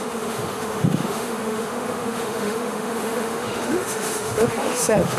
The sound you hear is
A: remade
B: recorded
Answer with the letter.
A